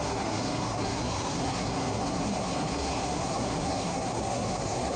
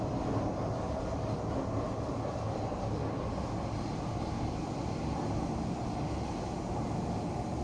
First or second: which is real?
second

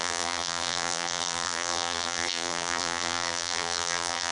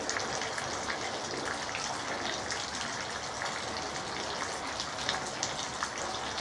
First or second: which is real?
second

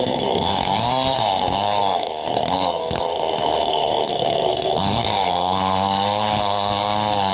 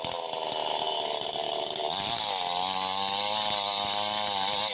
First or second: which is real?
second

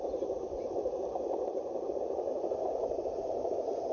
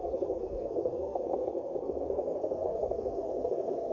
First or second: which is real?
first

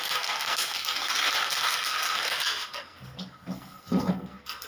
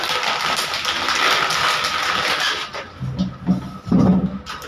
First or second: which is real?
second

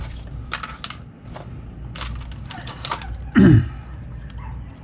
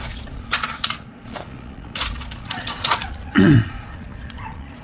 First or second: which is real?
first